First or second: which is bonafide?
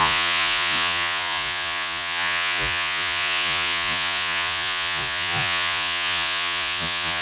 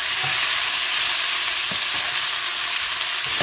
second